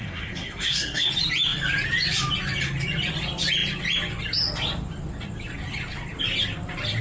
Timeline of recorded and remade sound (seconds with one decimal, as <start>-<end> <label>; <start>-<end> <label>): 0.0-1.1 remade; 1.1-7.0 recorded